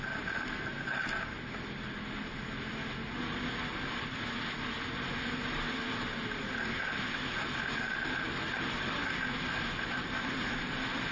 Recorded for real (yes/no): yes